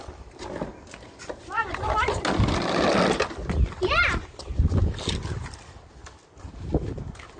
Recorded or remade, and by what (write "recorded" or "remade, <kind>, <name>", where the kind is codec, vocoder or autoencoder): recorded